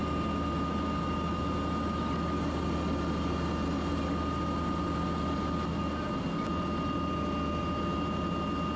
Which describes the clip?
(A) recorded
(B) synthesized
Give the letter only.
A